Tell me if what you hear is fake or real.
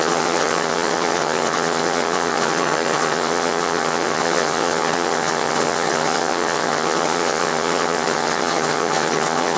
fake